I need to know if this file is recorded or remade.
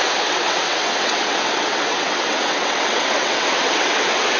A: remade